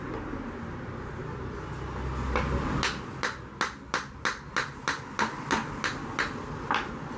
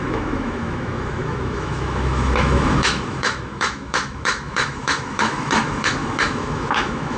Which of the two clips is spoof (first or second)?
second